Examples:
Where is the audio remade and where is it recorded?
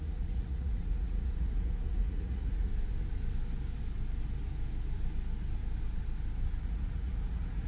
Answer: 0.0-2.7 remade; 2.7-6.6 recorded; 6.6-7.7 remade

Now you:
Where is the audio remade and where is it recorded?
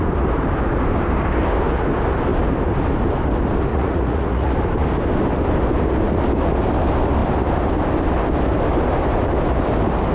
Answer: 0.0-3.7 recorded; 3.7-4.5 remade; 4.5-10.1 recorded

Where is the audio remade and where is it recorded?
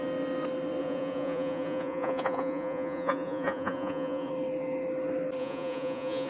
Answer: 0.0-0.8 recorded; 0.8-4.3 remade; 4.3-5.4 recorded; 5.4-6.3 remade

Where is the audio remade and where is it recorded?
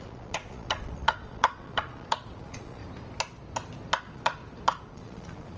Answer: 0.0-2.8 remade; 2.8-4.0 recorded; 4.0-4.4 remade; 4.4-4.9 recorded; 4.9-5.6 remade